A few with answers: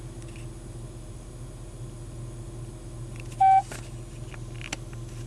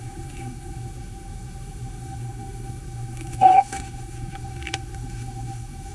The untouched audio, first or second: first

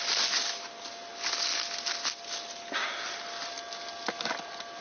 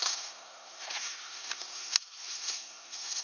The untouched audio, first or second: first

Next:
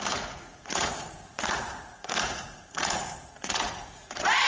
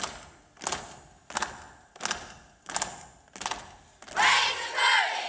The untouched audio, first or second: second